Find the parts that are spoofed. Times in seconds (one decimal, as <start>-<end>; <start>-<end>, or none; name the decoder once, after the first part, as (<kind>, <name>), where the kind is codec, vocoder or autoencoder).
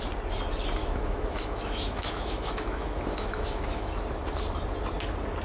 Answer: 0.8-4.0 (autoencoder, DAC-VAE)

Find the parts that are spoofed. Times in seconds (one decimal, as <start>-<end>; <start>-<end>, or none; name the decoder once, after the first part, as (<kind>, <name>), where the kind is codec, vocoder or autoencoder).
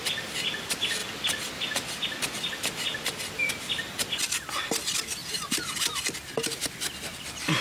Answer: none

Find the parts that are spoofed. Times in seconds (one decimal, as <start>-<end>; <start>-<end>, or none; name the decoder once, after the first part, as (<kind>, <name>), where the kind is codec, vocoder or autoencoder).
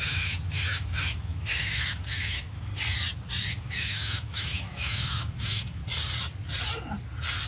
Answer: 0.0-2.7 (autoencoder, DAC-VAE); 3.6-5.8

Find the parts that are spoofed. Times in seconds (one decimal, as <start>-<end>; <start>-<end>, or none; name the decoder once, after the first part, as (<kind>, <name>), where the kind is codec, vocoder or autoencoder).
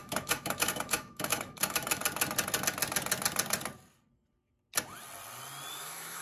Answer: 0.0-2.0 (autoencoder, DAC-VAE); 5.7-6.2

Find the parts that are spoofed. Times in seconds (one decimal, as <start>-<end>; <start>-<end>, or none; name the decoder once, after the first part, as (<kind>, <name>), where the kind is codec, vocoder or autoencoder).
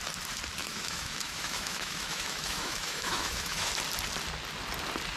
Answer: 0.6-3.7 (autoencoder, DAC-VAE)